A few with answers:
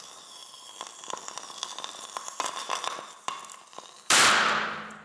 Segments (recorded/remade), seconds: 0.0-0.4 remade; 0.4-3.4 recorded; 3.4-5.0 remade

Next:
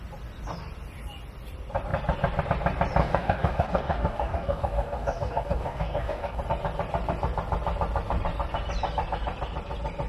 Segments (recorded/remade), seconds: 0.0-3.0 recorded; 3.0-6.4 remade; 6.4-10.1 recorded